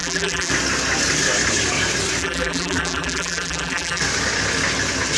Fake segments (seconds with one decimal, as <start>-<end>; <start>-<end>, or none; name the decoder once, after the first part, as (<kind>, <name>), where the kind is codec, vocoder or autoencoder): 0.0-0.5 (vocoder, BigVGAN v2); 2.2-4.0